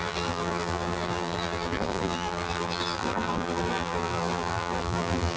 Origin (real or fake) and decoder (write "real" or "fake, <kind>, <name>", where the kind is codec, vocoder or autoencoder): fake, vocoder, BigVGAN v2